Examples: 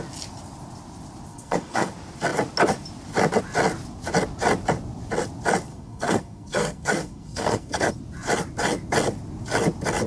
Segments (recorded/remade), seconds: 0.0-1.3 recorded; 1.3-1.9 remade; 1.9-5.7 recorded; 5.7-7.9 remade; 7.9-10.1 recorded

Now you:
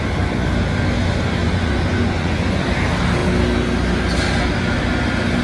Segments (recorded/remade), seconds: 0.0-1.4 recorded; 1.4-2.6 remade; 2.6-5.4 recorded

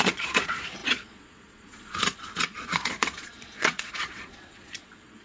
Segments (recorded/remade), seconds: 0.0-5.2 remade